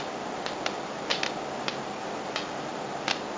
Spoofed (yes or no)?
no